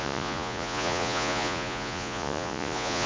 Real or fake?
fake